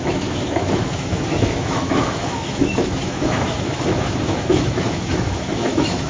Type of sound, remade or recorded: remade